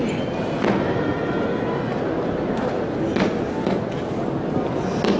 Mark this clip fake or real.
real